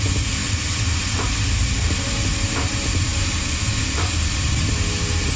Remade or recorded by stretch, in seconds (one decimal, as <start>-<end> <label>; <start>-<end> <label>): 0.0-5.4 recorded